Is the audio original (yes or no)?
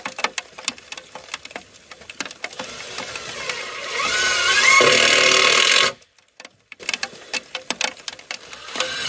yes